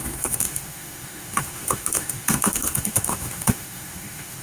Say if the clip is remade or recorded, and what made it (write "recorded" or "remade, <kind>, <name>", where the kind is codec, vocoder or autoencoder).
remade, autoencoder, DAC-VAE